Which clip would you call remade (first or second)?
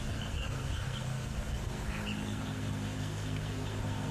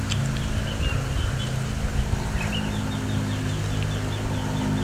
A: first